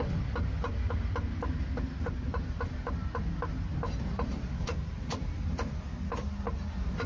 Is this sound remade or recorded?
recorded